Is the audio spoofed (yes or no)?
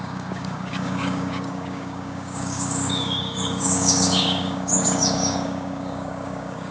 yes